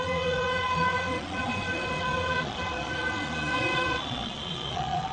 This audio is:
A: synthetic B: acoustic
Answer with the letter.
A